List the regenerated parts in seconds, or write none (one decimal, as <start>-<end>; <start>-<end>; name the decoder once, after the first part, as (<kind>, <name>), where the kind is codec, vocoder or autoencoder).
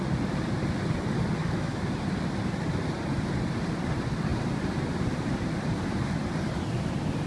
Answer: 1.4-1.9 (autoencoder, DAC-VAE)